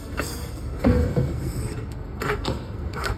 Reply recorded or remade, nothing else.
remade